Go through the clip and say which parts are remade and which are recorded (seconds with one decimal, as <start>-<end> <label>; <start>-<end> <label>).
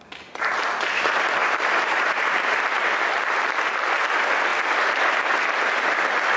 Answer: 0.0-1.4 recorded; 1.4-2.5 remade; 2.5-6.4 recorded